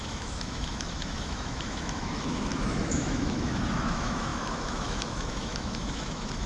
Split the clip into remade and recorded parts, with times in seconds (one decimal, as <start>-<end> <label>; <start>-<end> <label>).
0.0-6.5 remade